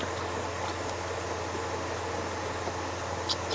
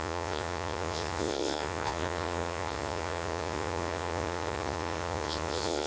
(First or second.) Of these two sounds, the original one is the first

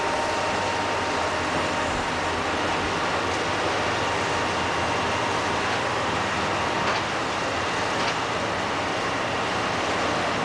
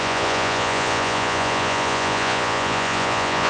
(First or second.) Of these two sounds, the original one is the first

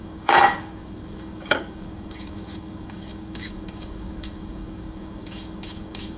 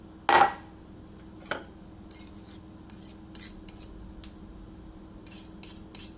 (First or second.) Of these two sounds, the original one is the second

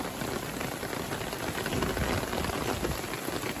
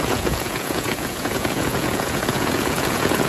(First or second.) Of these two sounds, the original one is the first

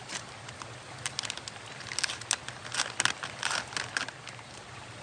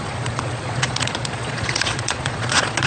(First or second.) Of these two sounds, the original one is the first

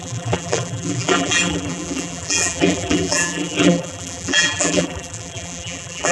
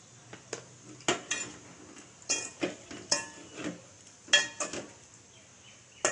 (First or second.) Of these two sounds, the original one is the second